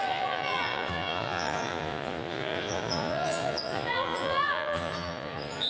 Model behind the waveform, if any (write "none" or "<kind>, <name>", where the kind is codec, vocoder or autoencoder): vocoder, Vocos